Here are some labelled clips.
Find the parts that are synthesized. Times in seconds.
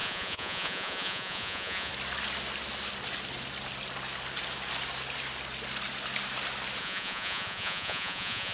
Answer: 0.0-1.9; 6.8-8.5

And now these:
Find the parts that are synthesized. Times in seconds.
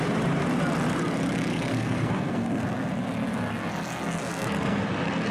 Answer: 1.5-2.9; 4.2-4.8